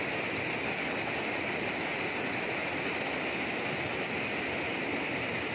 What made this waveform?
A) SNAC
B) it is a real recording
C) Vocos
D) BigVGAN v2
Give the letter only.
B